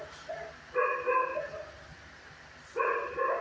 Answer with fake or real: real